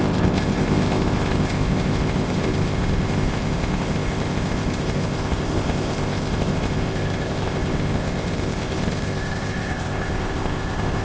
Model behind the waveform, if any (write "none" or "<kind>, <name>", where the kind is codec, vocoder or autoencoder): codec, ZipCodec